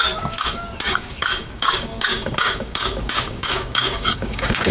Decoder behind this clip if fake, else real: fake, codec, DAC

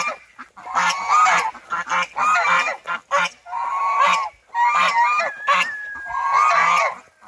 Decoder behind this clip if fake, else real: real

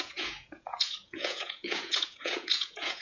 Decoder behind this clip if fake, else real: fake, vocoder, Vocos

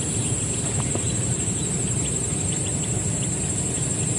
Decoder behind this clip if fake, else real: real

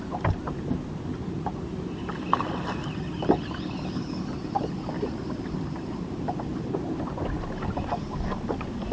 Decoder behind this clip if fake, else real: real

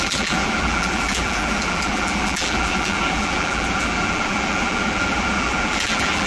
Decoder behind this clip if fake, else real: fake, vocoder, BigVGAN v2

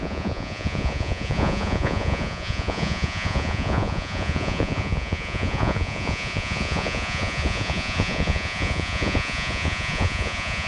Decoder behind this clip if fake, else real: fake, vocoder, Vocos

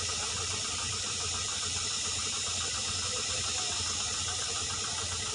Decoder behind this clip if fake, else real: real